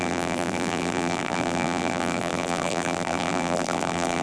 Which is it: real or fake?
fake